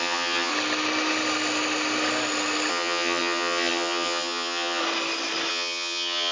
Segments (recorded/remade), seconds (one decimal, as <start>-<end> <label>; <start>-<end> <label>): 0.0-0.5 remade; 0.5-2.7 recorded; 2.7-4.8 remade; 4.8-5.5 recorded; 5.5-6.3 remade